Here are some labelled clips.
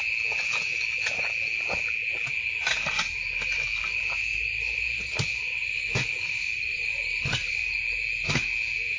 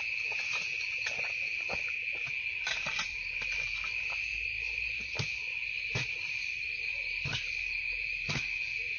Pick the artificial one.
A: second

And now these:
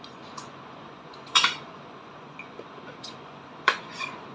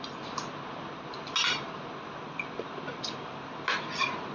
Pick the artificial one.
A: first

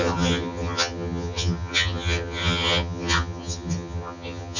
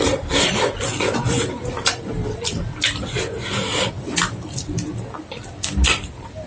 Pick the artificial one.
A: first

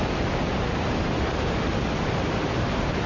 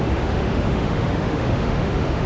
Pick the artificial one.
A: second